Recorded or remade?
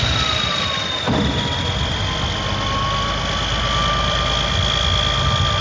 recorded